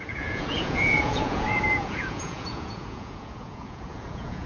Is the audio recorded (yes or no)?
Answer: no